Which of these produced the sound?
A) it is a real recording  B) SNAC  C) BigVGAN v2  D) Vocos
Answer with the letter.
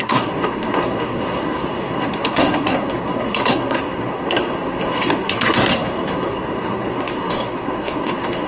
B